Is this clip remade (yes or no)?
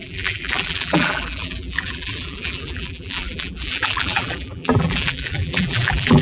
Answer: yes